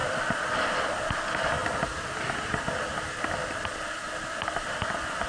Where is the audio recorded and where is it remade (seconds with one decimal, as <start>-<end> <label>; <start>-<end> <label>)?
0.0-5.3 recorded